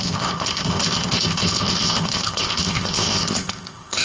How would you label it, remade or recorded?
remade